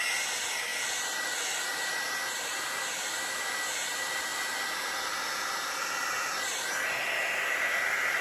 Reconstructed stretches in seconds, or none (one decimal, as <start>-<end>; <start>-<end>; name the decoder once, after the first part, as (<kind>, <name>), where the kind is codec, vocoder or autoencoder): none

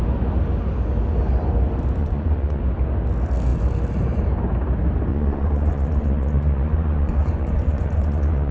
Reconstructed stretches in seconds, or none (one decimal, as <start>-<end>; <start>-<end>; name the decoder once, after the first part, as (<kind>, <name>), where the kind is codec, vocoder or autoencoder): 2.0-2.6 (vocoder, Vocos); 5.1-8.5